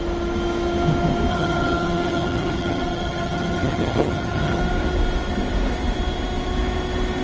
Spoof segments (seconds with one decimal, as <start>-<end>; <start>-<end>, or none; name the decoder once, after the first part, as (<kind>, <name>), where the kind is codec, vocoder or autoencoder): 1.3-4.6 (vocoder, HiFi-GAN)